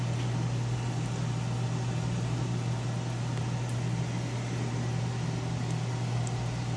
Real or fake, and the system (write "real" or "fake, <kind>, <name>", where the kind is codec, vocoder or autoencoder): real